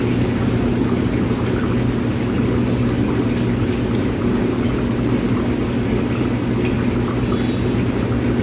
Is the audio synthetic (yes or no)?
no